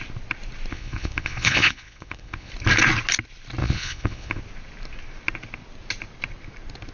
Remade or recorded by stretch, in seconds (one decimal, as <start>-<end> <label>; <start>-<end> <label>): 0.0-0.7 recorded; 0.7-2.5 remade; 2.5-3.6 recorded; 3.6-4.4 remade; 4.4-6.9 recorded